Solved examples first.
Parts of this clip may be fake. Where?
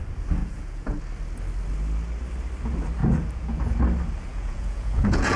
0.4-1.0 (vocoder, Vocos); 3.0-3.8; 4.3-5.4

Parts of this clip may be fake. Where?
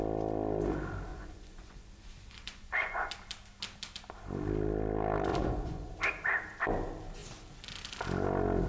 1.1-3.1 (vocoder, Vocos); 5.3-5.9